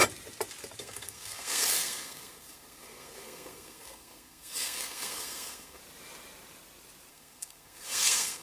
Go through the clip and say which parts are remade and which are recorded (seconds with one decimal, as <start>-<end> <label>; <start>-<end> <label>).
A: 0.0-0.8 recorded; 0.8-5.8 remade; 5.8-7.1 recorded; 7.1-8.4 remade